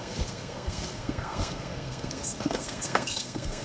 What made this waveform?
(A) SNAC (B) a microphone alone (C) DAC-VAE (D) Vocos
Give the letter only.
A